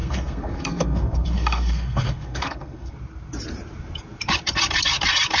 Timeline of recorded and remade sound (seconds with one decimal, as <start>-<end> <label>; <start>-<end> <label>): 0.0-2.9 remade; 2.9-5.4 recorded